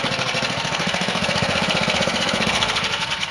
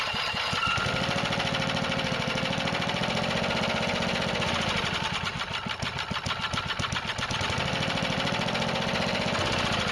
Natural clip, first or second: second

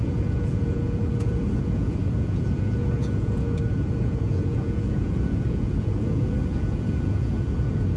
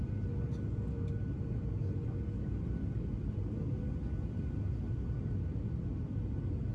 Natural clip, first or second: second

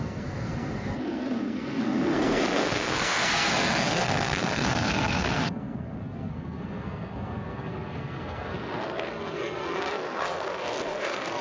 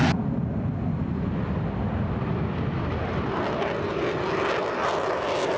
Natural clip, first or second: second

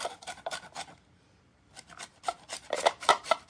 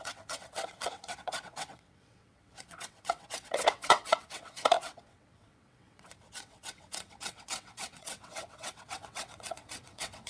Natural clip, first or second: first